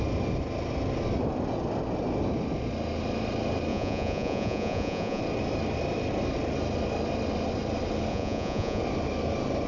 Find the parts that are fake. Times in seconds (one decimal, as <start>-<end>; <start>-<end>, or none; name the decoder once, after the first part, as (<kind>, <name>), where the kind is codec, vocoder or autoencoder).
3.7-5.2 (vocoder, Vocos); 8.1-8.8